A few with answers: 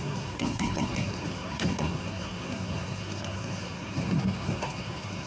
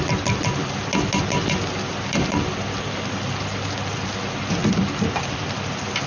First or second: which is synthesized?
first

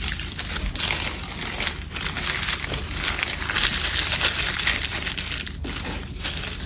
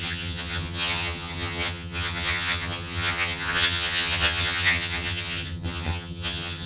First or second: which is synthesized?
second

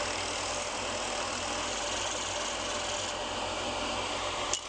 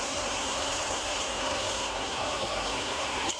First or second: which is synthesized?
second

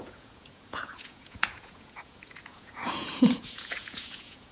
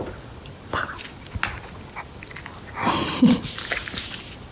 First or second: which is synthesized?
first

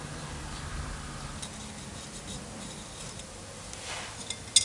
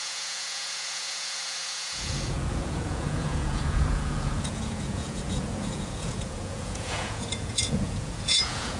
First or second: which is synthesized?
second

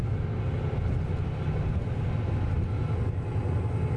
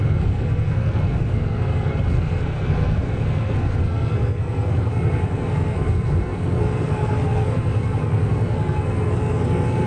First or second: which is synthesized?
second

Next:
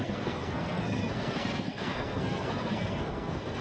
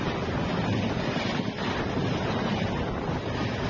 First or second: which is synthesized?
first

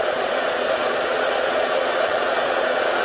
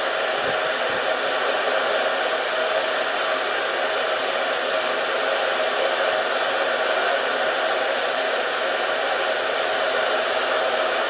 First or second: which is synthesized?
first